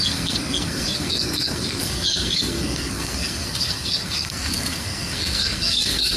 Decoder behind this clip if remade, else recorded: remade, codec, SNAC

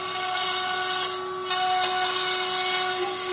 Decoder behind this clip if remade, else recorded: recorded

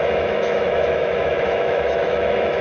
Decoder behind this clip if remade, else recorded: remade, autoencoder, DAC-VAE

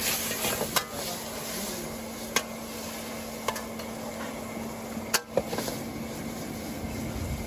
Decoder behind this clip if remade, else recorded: recorded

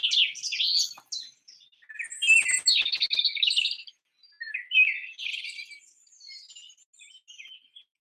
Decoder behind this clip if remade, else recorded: recorded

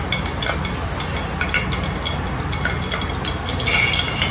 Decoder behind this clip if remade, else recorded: recorded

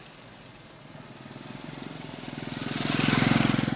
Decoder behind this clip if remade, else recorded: recorded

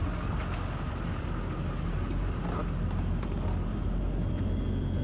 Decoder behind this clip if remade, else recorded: recorded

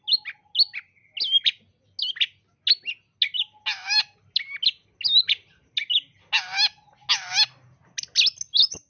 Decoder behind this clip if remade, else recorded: recorded